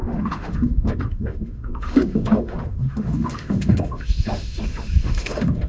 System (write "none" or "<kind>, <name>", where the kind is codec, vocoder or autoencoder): autoencoder, DAC-VAE